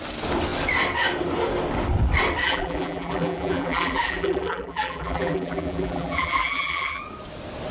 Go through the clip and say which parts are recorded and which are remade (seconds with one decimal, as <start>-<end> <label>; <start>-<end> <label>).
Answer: 0.0-2.4 recorded; 2.4-7.0 remade; 7.0-7.7 recorded